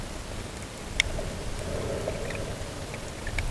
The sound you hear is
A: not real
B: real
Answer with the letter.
B